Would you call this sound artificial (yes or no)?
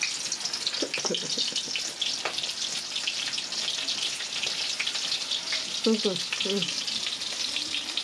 no